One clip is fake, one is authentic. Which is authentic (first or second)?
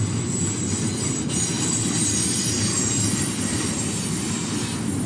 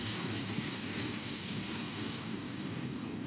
first